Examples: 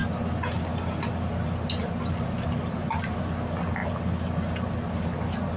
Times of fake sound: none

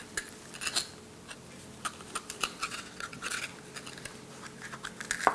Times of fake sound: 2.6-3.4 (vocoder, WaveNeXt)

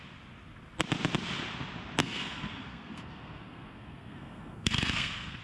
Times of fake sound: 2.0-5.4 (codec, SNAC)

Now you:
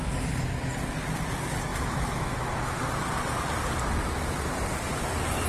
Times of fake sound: 1.7-2.5 (autoencoder, DAC-VAE)

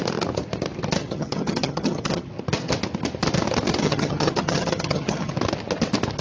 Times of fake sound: 1.0-2.3 (vocoder, HiFi-GAN); 3.8-5.3

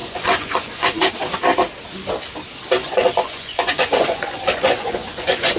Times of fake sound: 0.0-1.1 (vocoder, Vocos); 2.8-5.6